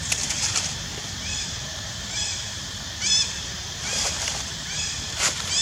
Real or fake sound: fake